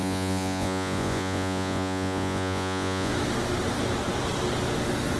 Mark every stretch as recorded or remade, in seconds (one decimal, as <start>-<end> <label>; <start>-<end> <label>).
0.0-3.1 remade; 3.1-5.2 recorded